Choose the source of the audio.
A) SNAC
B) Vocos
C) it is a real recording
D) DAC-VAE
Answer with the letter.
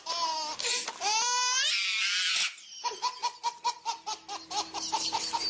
C